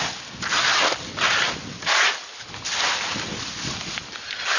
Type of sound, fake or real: real